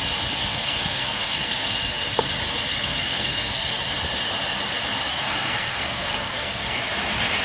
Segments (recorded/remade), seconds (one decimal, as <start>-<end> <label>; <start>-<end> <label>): 0.0-0.4 recorded; 0.4-2.3 remade; 2.3-2.7 recorded; 2.7-3.7 remade; 3.7-5.1 recorded; 5.1-6.8 remade; 6.8-7.4 recorded

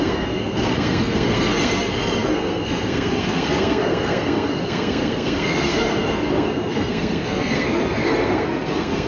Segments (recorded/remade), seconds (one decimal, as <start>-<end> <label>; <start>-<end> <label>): 0.0-9.1 remade

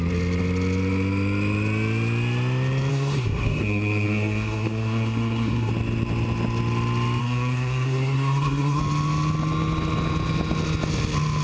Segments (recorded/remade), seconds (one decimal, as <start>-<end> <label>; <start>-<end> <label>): 0.0-2.9 recorded; 2.9-5.7 remade; 5.7-7.2 recorded; 7.2-8.8 remade; 8.8-11.4 recorded

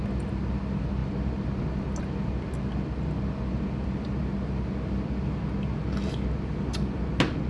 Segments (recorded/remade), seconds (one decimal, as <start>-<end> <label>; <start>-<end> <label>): 0.0-7.5 recorded